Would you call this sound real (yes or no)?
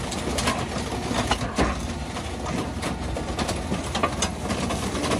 yes